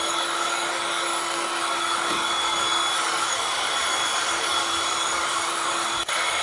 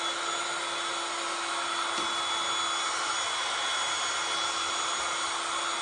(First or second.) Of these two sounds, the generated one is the first